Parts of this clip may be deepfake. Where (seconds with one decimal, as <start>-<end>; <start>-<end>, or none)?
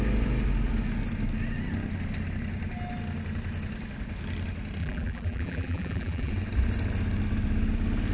4.8-6.3